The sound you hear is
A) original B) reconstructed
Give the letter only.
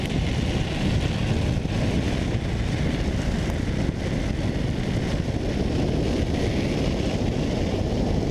A